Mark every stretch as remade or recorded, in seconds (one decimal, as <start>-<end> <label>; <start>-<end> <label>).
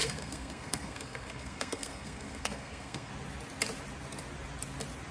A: 0.0-3.1 remade; 3.1-5.1 recorded